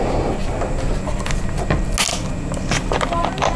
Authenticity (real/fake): real